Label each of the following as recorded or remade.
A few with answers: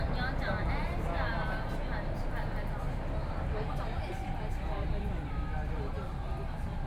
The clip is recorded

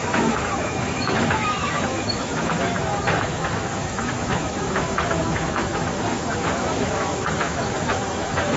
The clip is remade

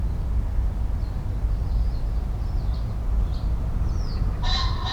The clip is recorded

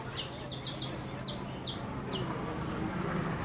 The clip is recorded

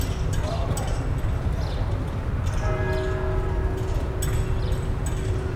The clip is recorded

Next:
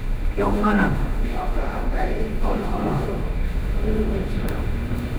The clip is remade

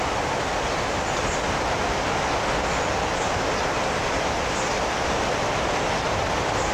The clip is recorded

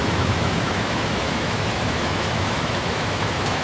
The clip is remade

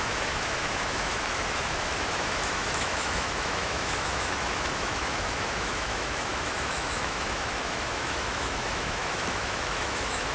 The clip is remade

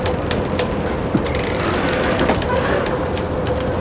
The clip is recorded